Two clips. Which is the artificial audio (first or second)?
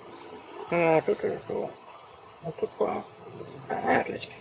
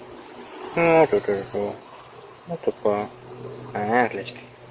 first